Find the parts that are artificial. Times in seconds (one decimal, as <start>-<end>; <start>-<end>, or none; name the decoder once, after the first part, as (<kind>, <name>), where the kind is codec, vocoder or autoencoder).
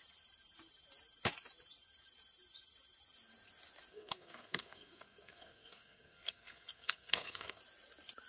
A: 3.9-7.6 (codec, SNAC)